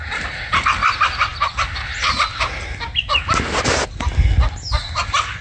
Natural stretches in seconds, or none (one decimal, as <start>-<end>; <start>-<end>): 0.0-5.4